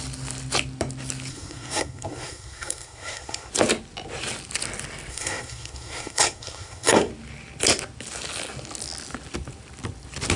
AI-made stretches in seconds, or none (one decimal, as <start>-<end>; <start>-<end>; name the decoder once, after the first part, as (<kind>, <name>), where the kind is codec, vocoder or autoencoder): 1.3-3.5 (codec, SNAC); 5.1-7.1